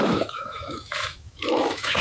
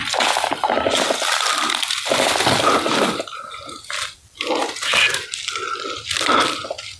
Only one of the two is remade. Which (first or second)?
first